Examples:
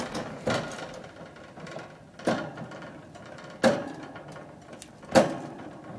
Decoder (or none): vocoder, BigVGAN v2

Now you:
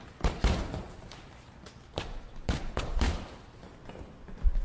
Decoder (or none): none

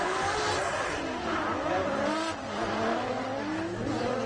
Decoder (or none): none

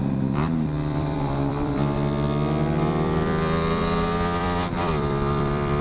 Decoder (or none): vocoder, BigVGAN v2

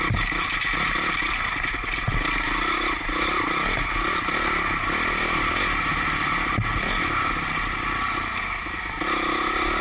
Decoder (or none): none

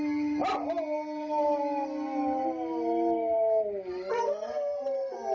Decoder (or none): none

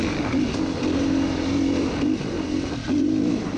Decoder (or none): none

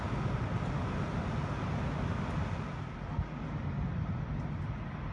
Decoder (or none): none